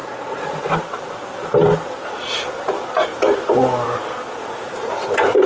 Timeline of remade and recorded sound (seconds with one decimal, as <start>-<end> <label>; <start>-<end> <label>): 0.0-0.7 remade; 0.7-4.4 recorded; 4.4-4.9 remade; 4.9-5.5 recorded